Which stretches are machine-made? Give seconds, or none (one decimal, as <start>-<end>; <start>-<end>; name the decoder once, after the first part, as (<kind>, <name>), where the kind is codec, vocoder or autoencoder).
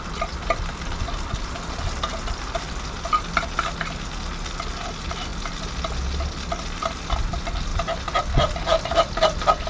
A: none